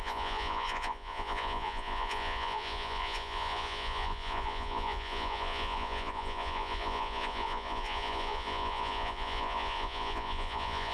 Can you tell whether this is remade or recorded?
remade